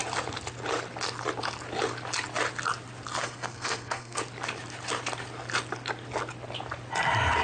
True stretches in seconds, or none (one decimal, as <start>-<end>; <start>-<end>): 0.0-3.2; 4.2-7.4